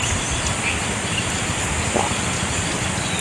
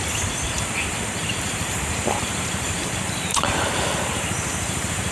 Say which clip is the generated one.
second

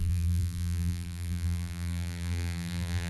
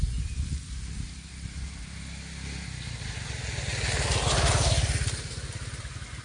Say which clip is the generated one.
first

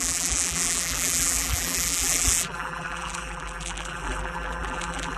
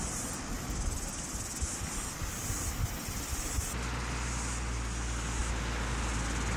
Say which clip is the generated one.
first